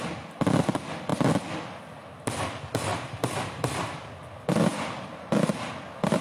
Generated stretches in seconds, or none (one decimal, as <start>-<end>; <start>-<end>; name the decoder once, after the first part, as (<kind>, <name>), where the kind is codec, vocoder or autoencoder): 2.9-4.0 (vocoder, BigVGAN v2); 4.7-5.3